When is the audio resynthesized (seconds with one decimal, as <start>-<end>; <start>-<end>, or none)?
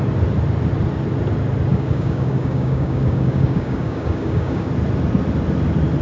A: 1.7-4.7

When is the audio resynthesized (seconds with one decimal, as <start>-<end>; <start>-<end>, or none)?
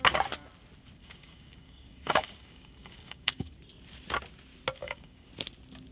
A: 1.0-3.5; 4.8-5.3